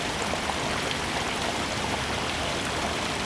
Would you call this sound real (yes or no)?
yes